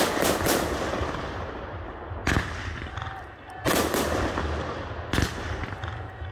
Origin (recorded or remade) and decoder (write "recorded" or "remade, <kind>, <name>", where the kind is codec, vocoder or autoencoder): recorded